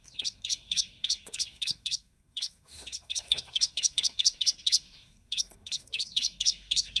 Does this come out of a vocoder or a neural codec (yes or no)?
yes